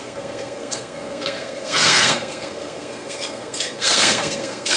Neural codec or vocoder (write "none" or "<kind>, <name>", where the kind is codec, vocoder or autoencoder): codec, SNAC